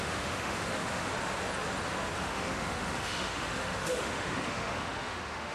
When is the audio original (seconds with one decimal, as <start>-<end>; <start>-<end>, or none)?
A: 1.1-2.2